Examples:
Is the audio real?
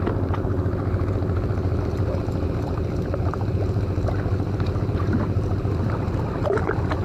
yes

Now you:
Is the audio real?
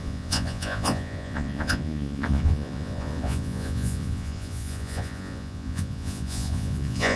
no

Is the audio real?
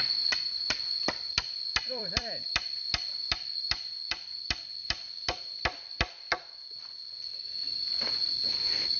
no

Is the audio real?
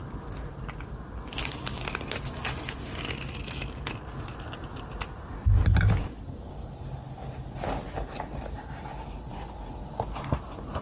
yes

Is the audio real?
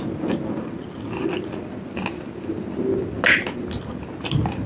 yes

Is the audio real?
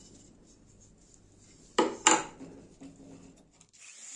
yes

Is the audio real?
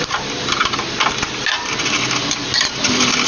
yes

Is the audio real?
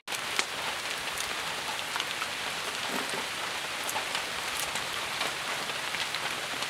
yes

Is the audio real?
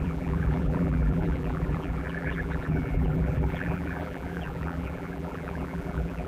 no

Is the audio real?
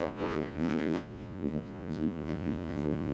no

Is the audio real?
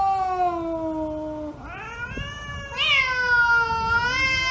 yes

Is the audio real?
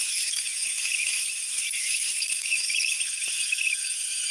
no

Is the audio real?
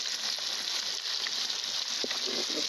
yes